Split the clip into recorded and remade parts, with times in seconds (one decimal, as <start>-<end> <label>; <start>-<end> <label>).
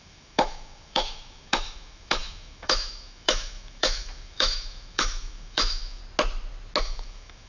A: 0.0-6.0 remade; 6.0-6.8 recorded; 6.8-7.5 remade